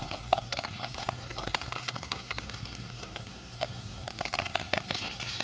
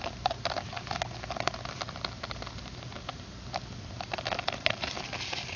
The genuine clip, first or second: second